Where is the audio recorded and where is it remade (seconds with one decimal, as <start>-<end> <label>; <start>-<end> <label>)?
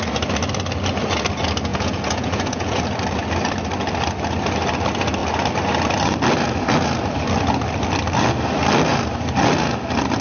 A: 0.0-1.7 recorded; 1.7-2.8 remade; 2.8-10.2 recorded